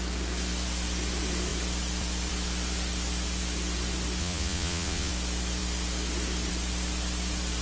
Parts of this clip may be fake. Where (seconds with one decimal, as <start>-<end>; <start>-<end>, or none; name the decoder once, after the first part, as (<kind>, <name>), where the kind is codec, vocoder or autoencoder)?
4.2-5.1 (vocoder, Vocos)